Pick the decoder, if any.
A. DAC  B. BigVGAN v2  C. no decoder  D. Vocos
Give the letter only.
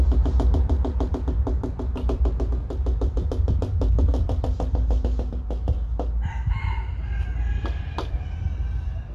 C